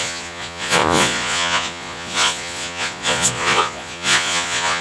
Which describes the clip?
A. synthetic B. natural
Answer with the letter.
A